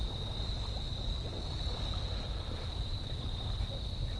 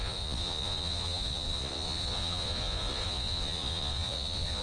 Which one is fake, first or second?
second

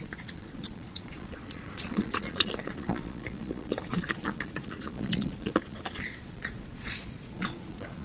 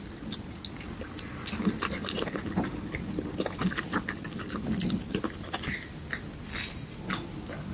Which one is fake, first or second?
first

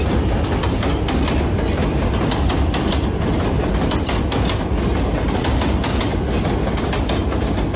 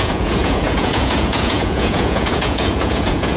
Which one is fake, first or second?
second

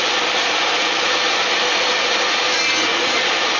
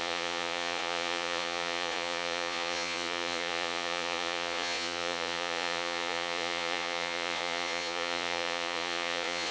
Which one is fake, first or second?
second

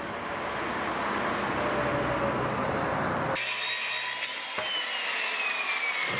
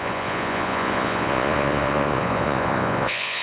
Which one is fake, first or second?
second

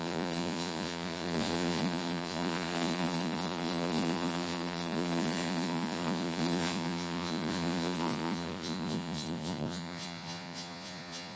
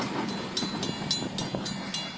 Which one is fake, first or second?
first